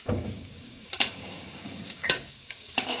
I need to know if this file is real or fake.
fake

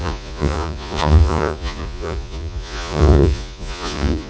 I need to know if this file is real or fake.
fake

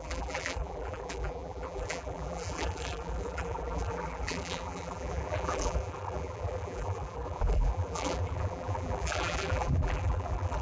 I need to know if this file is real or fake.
fake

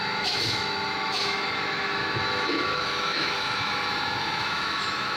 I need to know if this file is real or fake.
fake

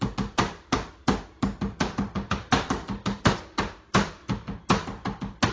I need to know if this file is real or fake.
real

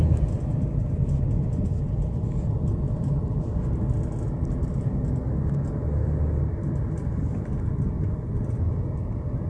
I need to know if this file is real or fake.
real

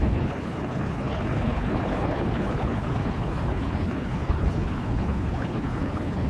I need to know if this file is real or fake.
fake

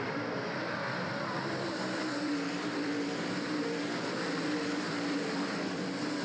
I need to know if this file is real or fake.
fake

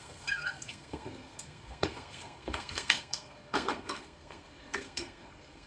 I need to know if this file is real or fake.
fake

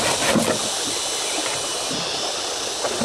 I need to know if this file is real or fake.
real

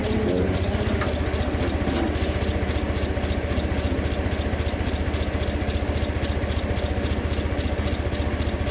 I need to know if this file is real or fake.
real